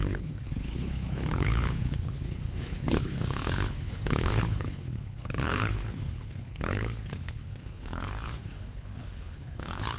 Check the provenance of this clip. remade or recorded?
remade